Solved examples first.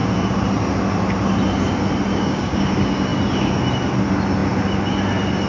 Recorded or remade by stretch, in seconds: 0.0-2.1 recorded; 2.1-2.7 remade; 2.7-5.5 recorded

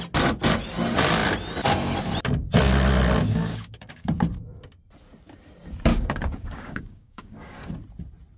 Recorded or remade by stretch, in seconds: 0.0-3.2 recorded; 3.2-4.1 remade; 4.1-5.9 recorded; 5.9-7.7 remade; 7.7-8.4 recorded

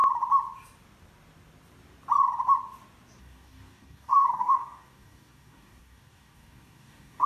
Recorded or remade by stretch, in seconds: 0.0-3.2 recorded; 3.2-7.3 remade

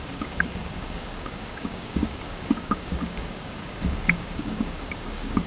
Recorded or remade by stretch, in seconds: 0.0-5.5 remade

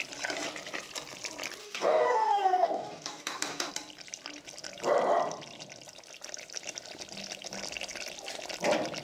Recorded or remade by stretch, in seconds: 0.0-1.6 recorded; 1.6-3.7 remade; 3.7-9.0 recorded